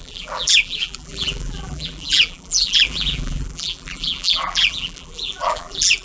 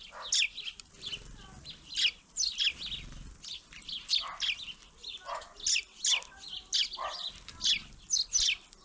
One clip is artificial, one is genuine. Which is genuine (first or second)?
second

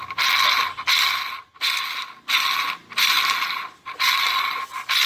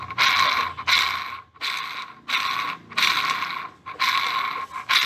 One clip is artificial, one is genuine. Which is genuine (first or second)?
second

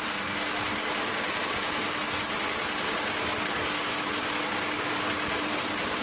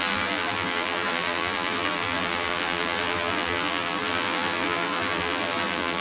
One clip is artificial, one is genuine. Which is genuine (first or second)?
first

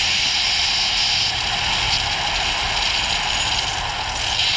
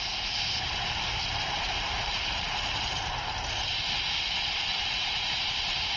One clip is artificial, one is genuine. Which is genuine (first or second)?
first